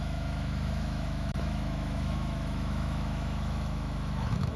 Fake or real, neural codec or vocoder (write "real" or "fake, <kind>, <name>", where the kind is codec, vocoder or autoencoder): fake, autoencoder, DAC-VAE